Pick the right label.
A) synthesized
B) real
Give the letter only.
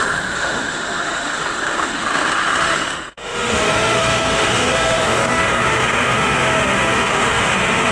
A